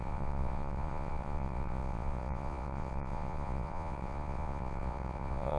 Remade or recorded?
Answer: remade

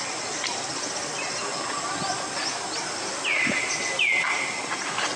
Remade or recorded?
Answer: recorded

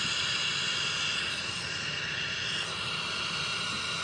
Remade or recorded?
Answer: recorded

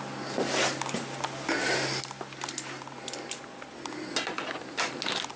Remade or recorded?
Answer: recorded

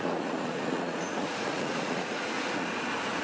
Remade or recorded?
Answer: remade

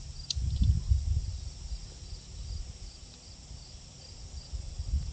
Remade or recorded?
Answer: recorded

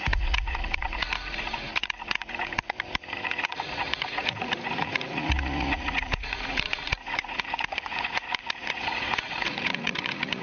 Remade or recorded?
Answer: remade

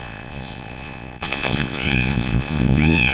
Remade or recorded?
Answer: remade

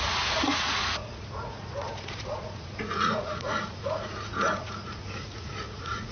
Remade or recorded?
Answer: remade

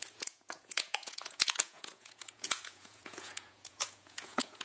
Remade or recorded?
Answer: remade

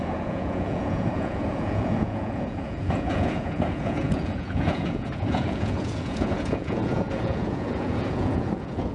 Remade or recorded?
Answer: remade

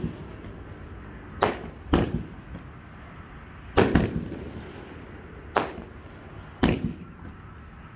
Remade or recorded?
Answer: recorded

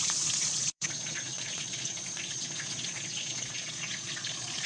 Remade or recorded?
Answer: remade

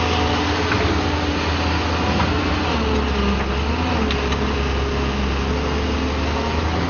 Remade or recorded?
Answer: recorded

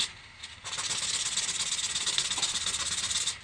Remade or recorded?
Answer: recorded